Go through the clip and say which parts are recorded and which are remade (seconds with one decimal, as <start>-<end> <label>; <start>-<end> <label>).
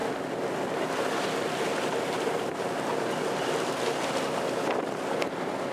0.0-5.7 recorded